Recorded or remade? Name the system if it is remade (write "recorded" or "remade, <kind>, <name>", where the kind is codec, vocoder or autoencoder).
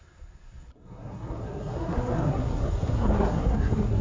remade, codec, SNAC